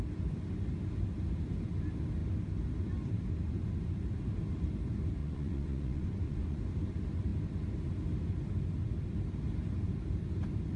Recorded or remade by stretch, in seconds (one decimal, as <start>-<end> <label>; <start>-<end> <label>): 0.0-5.2 recorded; 5.2-6.6 remade; 6.6-10.8 recorded